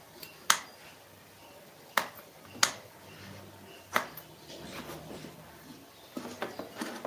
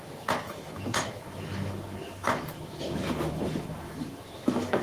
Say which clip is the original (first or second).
first